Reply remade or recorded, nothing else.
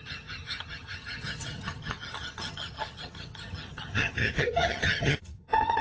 remade